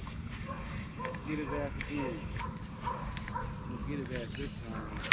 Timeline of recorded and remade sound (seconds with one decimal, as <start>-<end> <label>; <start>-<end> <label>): 0.0-2.4 remade; 2.4-5.1 recorded